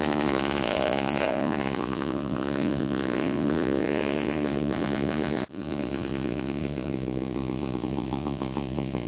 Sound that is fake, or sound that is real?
fake